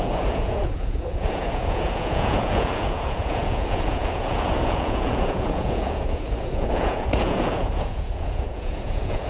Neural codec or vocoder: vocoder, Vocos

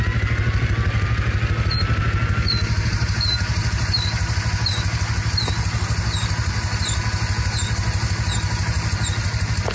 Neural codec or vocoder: none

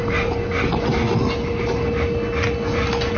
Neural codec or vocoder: none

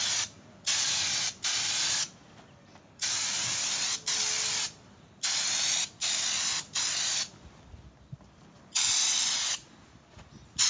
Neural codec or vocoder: none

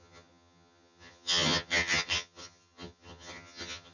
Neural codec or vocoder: vocoder, HiFi-GAN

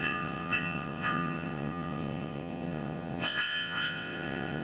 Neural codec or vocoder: vocoder, WaveNeXt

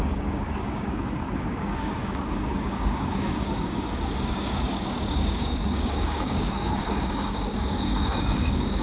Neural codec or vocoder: codec, DAC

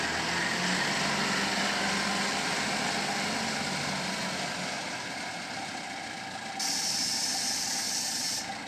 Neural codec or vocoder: none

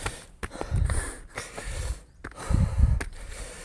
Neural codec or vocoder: none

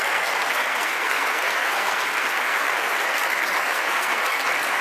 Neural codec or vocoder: codec, SNAC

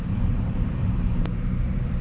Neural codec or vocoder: vocoder, BigVGAN v2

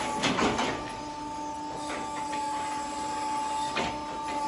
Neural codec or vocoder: none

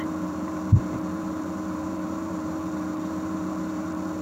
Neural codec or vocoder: vocoder, BigVGAN v2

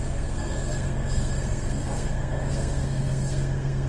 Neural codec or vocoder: codec, SNAC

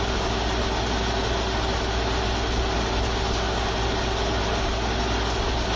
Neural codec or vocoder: none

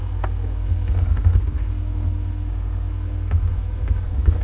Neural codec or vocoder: codec, SNAC